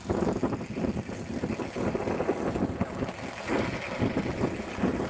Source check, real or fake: real